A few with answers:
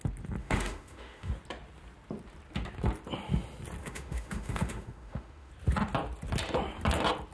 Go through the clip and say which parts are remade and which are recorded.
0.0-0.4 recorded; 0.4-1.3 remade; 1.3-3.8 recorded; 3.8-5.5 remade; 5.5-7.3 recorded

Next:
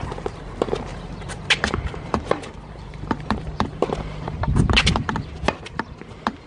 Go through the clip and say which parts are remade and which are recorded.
0.0-0.9 recorded; 0.9-4.5 remade; 4.5-6.5 recorded

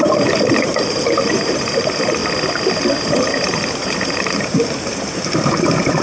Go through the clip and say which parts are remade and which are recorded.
0.0-2.2 remade; 2.2-3.0 recorded; 3.0-6.0 remade

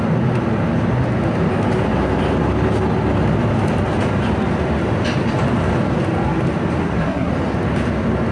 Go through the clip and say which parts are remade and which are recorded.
0.0-6.8 recorded; 6.8-7.3 remade; 7.3-8.3 recorded

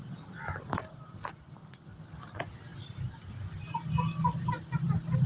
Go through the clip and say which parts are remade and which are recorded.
0.0-5.3 recorded

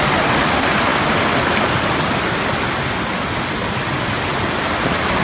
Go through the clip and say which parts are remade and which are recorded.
0.0-5.2 recorded

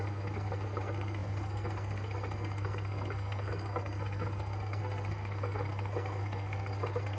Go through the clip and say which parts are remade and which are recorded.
0.0-7.2 remade